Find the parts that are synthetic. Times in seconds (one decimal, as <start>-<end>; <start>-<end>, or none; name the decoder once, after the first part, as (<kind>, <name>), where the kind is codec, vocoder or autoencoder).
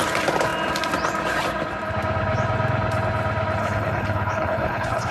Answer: 3.6-5.1 (codec, HILCodec)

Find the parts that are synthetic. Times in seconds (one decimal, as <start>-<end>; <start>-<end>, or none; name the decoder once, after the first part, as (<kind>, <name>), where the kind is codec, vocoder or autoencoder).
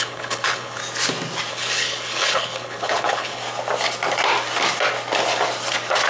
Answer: 0.0-0.8 (codec, HILCodec); 1.5-3.4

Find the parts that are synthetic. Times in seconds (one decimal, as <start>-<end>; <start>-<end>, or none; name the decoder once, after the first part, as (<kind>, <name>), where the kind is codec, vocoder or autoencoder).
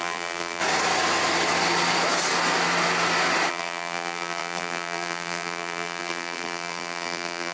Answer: 0.0-0.6 (vocoder, BigVGAN v2); 3.5-7.5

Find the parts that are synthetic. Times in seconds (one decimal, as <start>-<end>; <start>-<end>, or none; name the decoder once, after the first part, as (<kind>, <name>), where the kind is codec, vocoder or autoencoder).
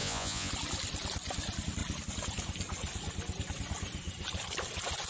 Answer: 0.0-0.5 (vocoder, Vocos)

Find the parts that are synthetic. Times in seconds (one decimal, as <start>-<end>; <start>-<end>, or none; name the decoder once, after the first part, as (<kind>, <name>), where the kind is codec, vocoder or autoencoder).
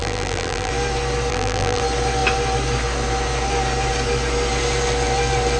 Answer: 0.0-0.7 (vocoder, BigVGAN v2); 1.3-1.8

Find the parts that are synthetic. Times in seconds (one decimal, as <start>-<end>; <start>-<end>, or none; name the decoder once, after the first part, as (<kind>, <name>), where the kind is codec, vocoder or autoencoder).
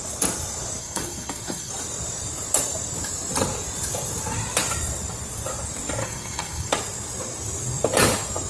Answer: 0.8-1.7 (codec, SNAC); 6.0-6.7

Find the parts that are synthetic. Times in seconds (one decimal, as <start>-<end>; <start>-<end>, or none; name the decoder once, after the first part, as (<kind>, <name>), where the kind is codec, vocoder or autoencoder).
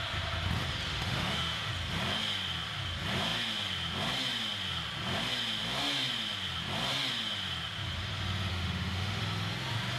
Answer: 0.9-1.7 (autoencoder, DAC-VAE); 8.5-9.2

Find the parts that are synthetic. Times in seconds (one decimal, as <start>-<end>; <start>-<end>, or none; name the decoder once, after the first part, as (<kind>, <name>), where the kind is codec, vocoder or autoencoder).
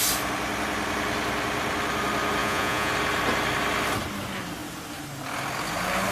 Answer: 2.4-2.9 (vocoder, Vocos)